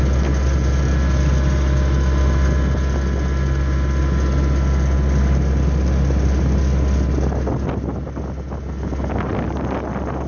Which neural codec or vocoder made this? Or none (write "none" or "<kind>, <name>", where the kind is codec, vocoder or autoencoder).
none